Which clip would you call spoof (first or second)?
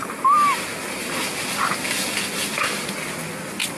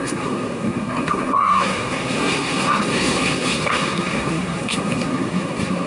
second